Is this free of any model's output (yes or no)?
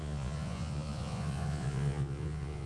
no